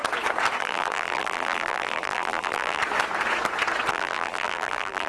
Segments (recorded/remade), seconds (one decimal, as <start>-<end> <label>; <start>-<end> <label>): 0.0-0.6 recorded; 0.6-2.8 remade; 2.8-3.9 recorded; 3.9-5.1 remade